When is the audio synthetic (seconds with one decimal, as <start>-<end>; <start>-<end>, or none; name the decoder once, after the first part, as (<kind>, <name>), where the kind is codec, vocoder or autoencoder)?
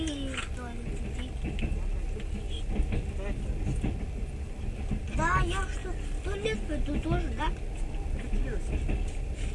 none